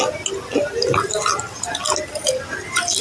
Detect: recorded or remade recorded